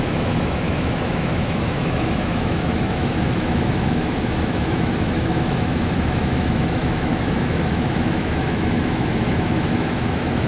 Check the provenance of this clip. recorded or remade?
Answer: remade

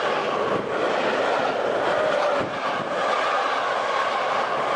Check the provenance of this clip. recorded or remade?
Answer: recorded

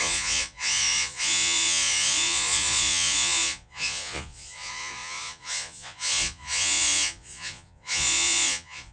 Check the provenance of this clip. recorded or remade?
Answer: remade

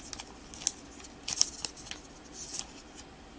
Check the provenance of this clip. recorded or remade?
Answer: recorded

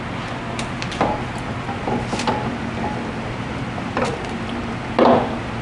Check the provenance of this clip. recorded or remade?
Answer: recorded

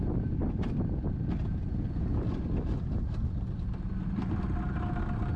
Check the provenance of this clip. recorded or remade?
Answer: recorded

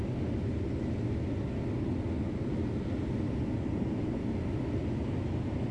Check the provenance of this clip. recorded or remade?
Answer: recorded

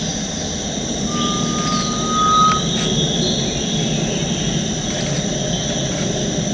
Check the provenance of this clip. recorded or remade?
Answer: recorded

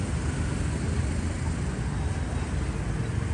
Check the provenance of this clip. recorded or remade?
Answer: recorded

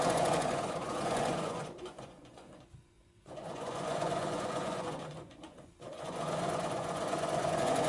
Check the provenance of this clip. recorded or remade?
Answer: remade